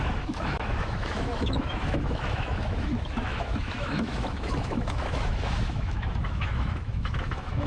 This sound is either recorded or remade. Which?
remade